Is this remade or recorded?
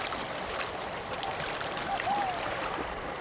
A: remade